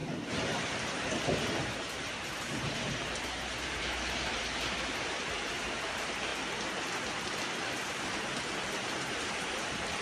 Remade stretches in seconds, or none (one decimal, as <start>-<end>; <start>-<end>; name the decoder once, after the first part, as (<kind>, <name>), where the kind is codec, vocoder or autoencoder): 0.0-6.3 (vocoder, BigVGAN v2); 7.9-10.0